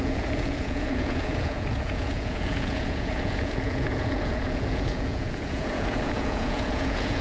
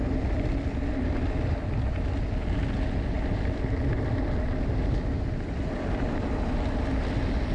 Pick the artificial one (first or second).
first